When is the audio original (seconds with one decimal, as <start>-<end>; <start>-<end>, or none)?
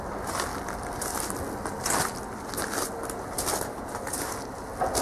0.0-5.0